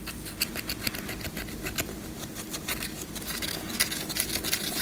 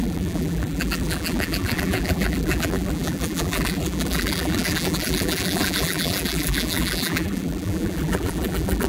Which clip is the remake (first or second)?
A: second